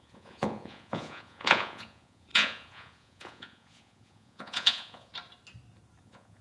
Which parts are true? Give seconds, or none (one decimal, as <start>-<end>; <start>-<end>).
5.1-6.0